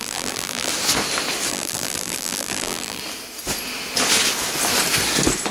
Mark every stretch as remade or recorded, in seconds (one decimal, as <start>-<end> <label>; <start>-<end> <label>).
0.0-0.7 remade; 0.7-1.5 recorded; 1.5-3.0 remade; 3.0-5.5 recorded